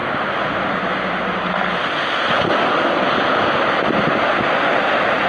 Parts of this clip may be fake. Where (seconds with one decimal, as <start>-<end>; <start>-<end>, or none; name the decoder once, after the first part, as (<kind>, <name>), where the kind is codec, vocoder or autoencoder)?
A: none